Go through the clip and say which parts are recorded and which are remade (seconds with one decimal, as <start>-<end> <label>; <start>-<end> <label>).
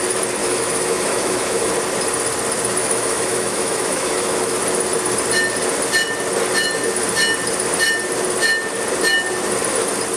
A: 0.0-0.4 recorded; 0.4-1.7 remade; 1.7-2.8 recorded; 2.8-4.6 remade; 4.6-10.2 recorded